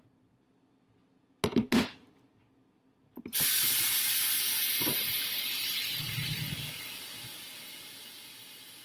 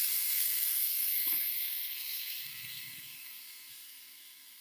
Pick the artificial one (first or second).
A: second